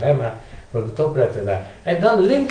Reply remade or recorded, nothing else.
remade